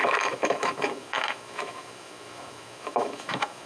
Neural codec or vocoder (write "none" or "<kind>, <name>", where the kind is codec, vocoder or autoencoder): autoencoder, DAC-VAE